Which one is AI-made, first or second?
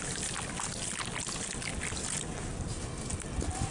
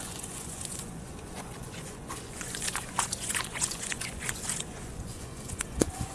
second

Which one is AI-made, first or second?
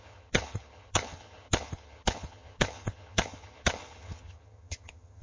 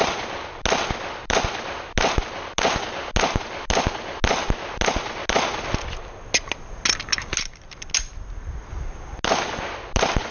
first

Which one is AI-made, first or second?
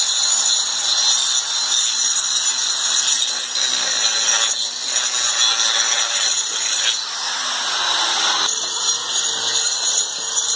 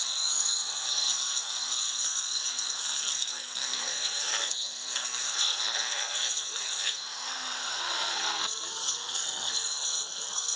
second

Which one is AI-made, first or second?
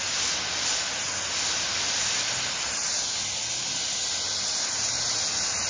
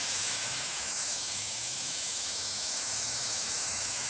second